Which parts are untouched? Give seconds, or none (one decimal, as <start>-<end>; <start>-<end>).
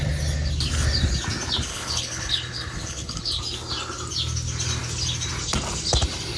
0.0-1.7; 3.4-6.4